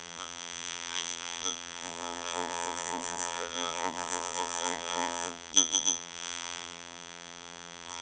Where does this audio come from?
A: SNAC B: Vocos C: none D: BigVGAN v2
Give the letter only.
D